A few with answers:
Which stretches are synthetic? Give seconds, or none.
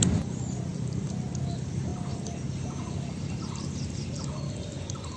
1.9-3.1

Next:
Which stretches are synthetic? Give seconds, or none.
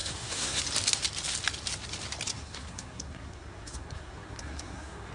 0.0-0.6; 2.3-5.1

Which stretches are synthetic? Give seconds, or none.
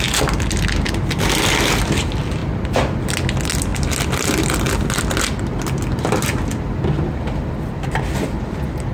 2.4-3.0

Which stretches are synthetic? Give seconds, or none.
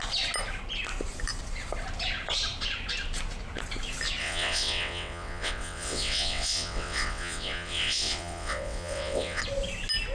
4.2-9.4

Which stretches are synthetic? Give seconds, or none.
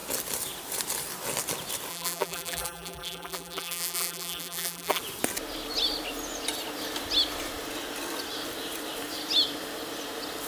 1.9-5.0